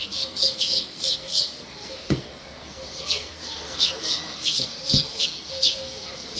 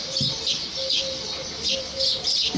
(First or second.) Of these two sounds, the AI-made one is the first